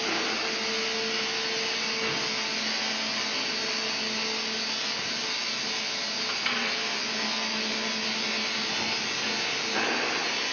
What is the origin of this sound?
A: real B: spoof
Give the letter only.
A